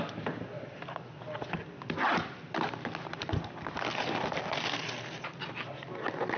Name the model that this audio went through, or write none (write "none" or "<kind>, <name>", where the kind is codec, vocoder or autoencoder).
none